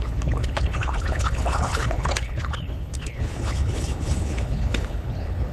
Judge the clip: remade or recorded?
remade